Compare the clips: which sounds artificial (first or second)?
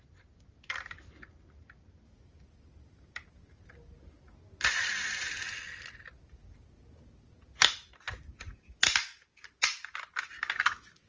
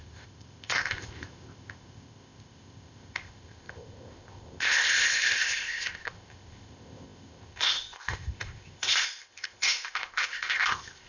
second